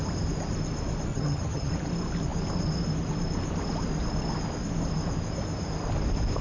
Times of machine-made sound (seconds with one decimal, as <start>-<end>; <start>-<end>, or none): 1.1-1.7